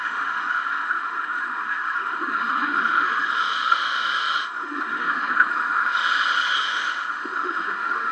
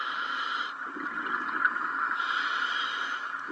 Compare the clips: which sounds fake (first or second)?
first